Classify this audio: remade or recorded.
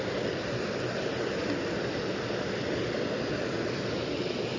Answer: recorded